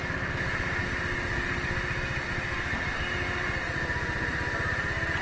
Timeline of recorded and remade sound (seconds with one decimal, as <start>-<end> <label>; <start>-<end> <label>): 0.0-5.2 recorded